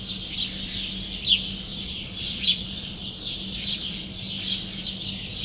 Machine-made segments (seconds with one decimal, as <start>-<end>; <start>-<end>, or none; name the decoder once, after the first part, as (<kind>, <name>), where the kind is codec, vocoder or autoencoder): 1.7-3.1 (vocoder, Vocos); 3.5-4.2